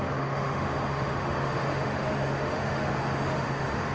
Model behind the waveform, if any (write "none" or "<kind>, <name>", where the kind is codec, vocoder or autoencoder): autoencoder, DAC-VAE